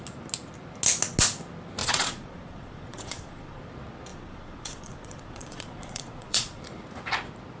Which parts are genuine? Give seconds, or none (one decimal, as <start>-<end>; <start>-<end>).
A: 0.0-1.8; 3.6-4.1; 6.6-7.6